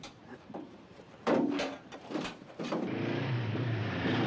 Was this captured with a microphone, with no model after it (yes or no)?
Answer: no